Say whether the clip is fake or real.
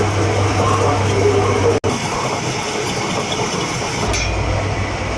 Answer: real